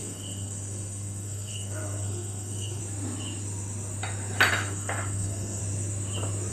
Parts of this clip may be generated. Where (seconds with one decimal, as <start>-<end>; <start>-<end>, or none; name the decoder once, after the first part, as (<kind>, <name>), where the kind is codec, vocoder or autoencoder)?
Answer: 0.0-2.8 (codec, SNAC); 4.5-5.6

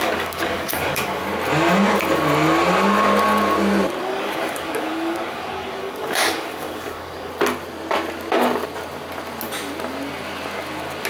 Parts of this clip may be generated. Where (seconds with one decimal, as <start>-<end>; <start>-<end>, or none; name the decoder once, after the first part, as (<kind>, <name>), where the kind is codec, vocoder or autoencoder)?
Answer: 0.0-1.2 (codec, DAC); 4.0-7.3